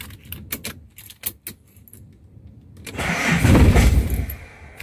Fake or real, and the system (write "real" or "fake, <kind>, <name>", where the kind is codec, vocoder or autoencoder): real